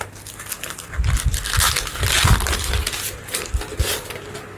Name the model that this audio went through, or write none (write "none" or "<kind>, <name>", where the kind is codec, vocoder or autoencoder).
none